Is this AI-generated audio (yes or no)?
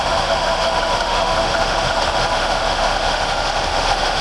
yes